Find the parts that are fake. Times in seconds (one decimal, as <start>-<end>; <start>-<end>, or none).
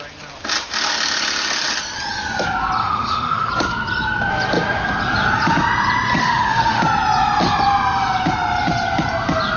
2.8-3.5; 6.2-6.8